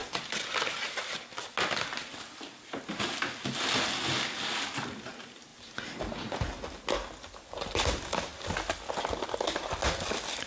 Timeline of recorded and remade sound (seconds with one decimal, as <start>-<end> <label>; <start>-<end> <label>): 0.0-10.5 recorded